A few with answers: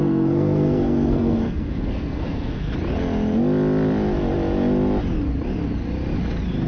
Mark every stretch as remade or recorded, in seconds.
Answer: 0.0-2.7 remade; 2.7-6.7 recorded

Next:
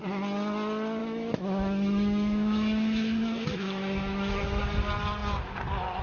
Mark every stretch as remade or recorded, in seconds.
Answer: 0.0-1.0 recorded; 1.0-4.6 remade; 4.6-6.0 recorded

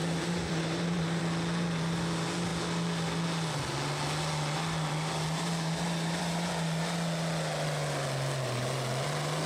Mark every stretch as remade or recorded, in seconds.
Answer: 0.0-1.2 remade; 1.2-9.5 recorded

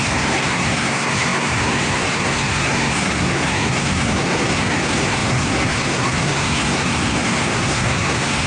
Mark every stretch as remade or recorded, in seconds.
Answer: 0.0-8.5 remade